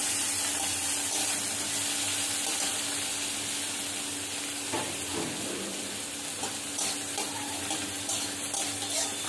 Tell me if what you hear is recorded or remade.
recorded